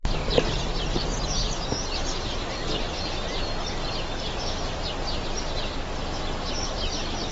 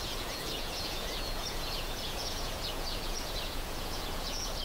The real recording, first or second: first